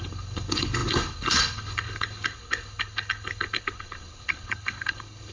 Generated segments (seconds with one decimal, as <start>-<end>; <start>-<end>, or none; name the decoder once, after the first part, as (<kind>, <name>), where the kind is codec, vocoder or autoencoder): 0.0-5.3 (codec, HILCodec)